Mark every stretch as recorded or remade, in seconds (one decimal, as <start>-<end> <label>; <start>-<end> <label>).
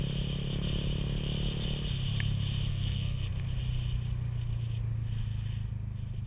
0.0-2.7 recorded; 2.7-3.3 remade; 3.3-6.3 recorded